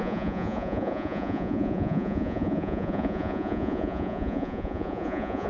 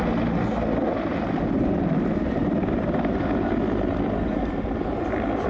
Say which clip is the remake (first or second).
first